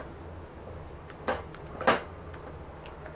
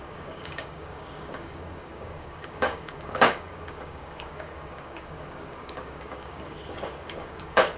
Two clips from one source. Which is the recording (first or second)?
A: first